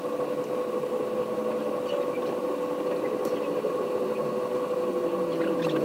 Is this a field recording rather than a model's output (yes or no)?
yes